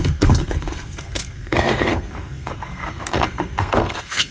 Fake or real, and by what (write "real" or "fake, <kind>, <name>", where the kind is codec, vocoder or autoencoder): fake, codec, SNAC